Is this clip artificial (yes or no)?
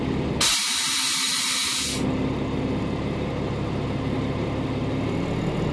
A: no